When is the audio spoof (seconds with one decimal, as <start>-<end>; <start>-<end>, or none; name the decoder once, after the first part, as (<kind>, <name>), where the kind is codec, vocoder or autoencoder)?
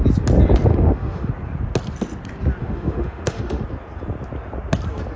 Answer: 0.7-1.3 (autoencoder, DAC-VAE); 2.6-3.6